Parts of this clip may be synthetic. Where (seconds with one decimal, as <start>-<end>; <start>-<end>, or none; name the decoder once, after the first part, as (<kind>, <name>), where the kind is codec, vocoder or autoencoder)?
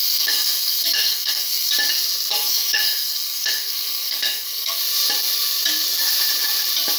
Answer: 0.0-1.7 (codec, SNAC); 2.3-4.8